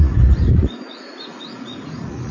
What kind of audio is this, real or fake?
fake